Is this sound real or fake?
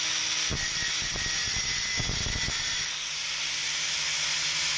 real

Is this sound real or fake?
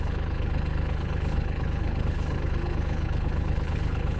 fake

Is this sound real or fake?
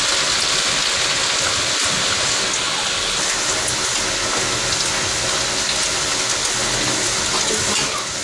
real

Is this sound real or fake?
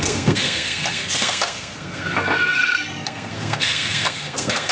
fake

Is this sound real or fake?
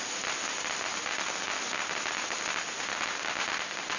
real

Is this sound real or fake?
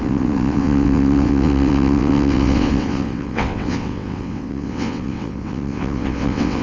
fake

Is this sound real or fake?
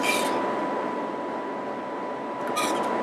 real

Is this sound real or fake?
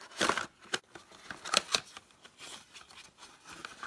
real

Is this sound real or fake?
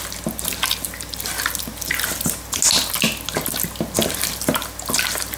real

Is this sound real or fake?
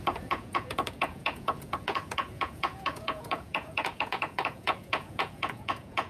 fake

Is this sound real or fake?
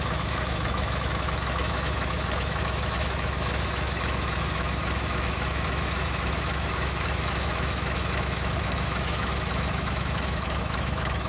fake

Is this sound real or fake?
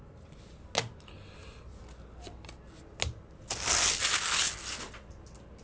real